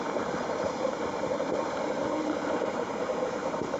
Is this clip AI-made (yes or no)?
yes